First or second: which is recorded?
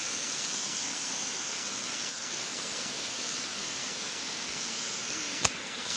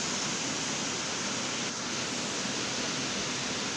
second